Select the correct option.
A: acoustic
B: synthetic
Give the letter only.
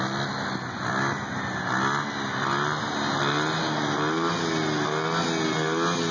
A